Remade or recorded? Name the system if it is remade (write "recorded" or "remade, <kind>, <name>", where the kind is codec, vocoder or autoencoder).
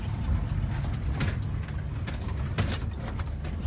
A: recorded